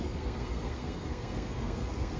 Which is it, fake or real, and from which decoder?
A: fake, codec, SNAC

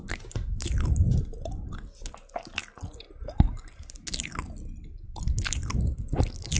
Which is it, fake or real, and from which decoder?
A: real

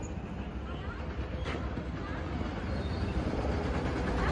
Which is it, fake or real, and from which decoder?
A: real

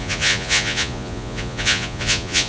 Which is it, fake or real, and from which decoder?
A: fake, vocoder, Vocos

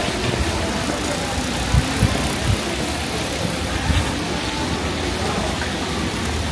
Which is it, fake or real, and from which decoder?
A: real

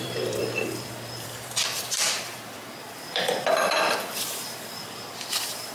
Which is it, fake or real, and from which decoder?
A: fake, vocoder, BigVGAN v2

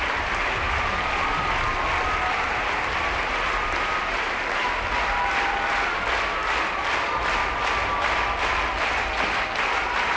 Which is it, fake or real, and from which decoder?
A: real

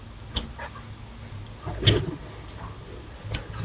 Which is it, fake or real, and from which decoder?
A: real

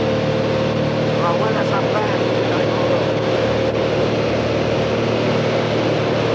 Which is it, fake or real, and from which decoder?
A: real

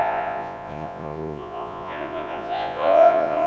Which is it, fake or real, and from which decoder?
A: fake, vocoder, Vocos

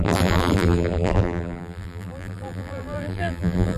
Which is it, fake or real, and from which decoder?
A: fake, vocoder, BigVGAN v2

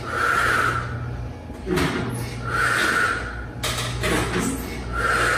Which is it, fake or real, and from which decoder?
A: real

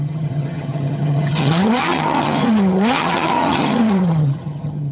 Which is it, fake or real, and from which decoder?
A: fake, vocoder, HiFi-GAN